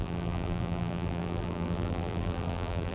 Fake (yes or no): yes